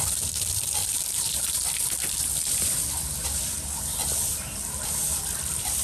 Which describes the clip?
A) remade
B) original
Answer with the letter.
A